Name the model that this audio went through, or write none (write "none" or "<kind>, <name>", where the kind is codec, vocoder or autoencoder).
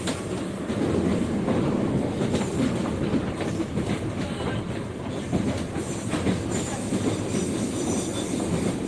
none